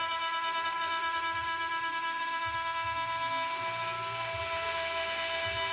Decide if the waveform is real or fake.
real